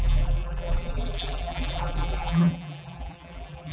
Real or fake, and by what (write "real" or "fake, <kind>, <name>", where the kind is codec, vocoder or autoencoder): fake, vocoder, BigVGAN v2